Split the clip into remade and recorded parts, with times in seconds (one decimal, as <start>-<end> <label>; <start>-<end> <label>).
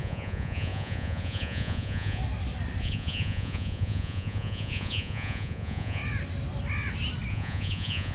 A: 0.0-2.2 remade; 2.2-2.8 recorded; 2.8-6.0 remade; 6.0-7.3 recorded; 7.3-8.1 remade